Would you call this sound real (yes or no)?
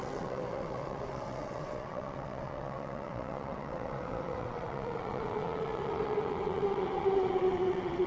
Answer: no